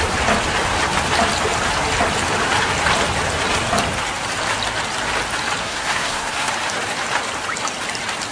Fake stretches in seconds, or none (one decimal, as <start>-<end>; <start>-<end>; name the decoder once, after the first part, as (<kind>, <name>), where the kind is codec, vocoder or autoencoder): 5.6-6.5 (codec, SNAC)